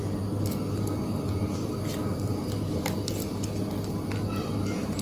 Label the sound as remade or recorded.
recorded